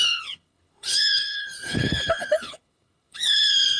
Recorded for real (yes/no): no